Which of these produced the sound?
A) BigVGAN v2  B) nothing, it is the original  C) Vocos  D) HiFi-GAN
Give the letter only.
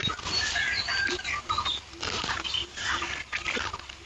B